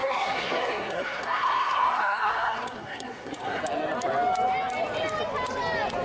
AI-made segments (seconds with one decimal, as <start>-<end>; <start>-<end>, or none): 0.0-3.6